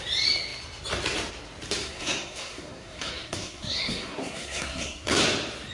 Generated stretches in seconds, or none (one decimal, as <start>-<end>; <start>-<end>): 1.8-5.2